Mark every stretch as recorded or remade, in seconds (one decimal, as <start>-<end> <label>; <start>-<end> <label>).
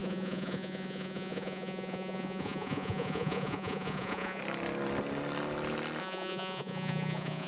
0.0-4.4 remade; 4.4-6.0 recorded; 6.0-7.5 remade